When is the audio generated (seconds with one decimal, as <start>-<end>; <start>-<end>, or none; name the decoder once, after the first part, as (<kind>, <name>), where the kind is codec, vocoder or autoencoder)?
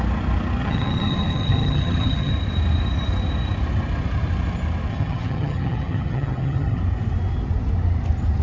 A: 0.6-2.3 (vocoder, HiFi-GAN); 4.9-6.8